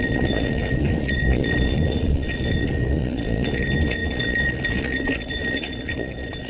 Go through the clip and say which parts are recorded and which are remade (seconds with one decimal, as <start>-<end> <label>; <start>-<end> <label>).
0.0-6.5 remade